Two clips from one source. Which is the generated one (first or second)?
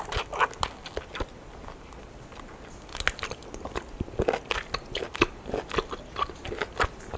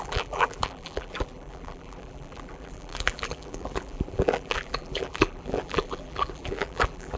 second